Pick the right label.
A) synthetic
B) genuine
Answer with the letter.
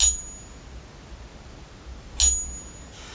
B